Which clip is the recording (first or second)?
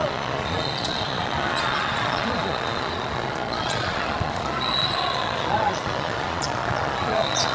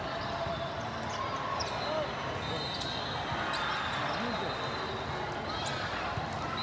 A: second